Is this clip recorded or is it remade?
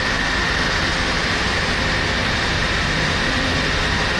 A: recorded